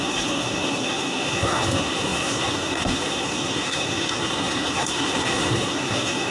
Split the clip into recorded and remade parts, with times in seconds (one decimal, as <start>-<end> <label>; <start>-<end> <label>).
0.0-6.3 remade